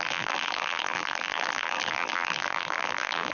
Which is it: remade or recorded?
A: remade